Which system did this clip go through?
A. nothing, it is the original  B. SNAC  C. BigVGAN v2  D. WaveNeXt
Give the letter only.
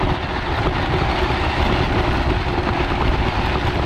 A